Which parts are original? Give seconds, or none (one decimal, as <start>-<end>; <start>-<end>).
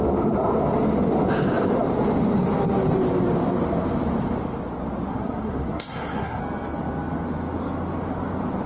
0.0-5.1; 6.4-8.7